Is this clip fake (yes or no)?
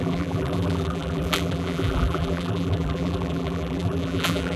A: yes